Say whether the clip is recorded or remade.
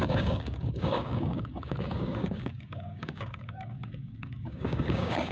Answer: remade